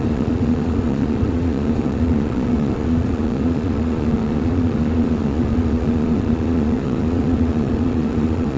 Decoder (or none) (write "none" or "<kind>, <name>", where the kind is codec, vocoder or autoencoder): vocoder, Vocos